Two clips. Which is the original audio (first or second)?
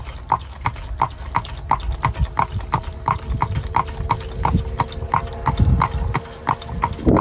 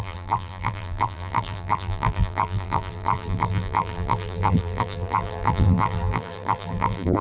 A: first